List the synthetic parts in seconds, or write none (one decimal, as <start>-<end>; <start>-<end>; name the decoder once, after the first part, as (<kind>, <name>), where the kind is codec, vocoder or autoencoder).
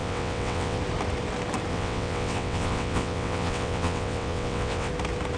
0.0-0.8 (vocoder, WaveNeXt); 1.7-4.9